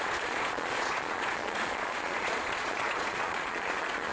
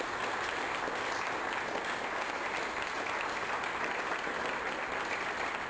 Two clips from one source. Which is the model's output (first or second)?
first